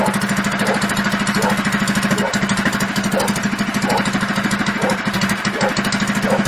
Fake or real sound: real